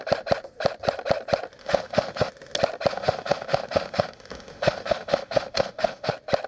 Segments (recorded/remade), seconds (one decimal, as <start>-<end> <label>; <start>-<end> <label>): 0.0-1.6 recorded; 1.6-2.3 remade; 2.3-2.9 recorded; 2.9-6.1 remade; 6.1-6.5 recorded